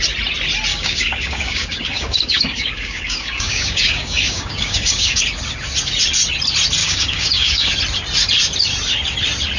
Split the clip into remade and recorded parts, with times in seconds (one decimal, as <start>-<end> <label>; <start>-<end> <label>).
0.0-0.7 recorded; 0.7-5.2 remade; 5.2-6.8 recorded; 6.8-7.7 remade; 7.7-9.6 recorded